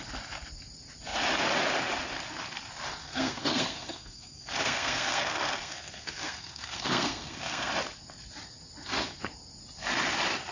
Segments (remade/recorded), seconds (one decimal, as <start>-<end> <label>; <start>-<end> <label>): 0.0-3.0 recorded; 3.0-7.7 remade; 7.7-10.5 recorded